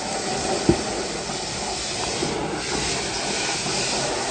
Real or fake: real